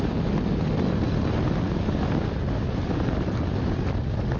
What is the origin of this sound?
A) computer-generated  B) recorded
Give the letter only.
B